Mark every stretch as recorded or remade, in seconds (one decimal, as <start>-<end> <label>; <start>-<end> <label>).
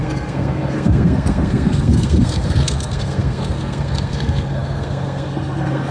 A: 0.0-5.9 remade